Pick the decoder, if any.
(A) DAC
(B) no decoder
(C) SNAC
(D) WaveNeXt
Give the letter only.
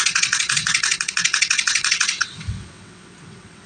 D